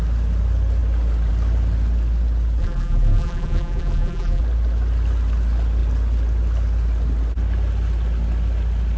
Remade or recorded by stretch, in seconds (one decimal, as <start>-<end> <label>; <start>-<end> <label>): 0.0-2.6 recorded; 2.6-4.4 remade; 4.4-9.0 recorded